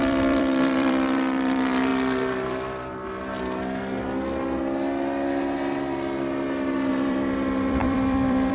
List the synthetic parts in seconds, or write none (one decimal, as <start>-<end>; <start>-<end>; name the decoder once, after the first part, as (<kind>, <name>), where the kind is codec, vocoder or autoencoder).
0.0-1.9 (vocoder, BigVGAN v2); 6.9-8.5